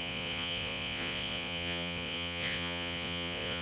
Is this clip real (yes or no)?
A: no